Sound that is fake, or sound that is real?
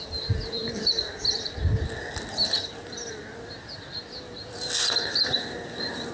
real